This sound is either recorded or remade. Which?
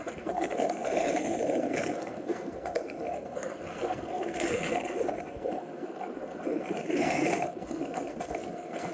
remade